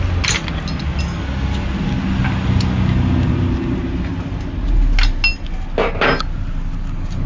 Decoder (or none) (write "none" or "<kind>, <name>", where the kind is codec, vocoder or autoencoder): none